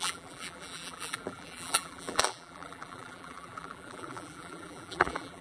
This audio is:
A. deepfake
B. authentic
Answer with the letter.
A